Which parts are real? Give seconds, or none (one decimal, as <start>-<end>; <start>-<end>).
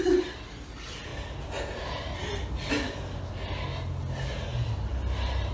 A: 0.0-5.5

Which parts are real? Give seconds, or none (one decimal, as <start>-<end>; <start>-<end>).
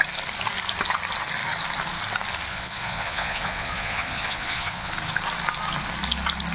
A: 0.0-2.5; 4.9-6.5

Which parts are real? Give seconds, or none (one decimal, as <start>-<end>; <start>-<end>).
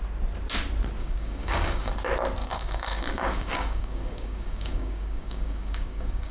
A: 0.0-1.0; 1.9-2.4